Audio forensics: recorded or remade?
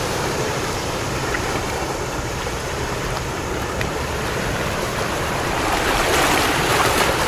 remade